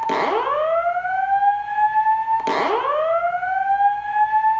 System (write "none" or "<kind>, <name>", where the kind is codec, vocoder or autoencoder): none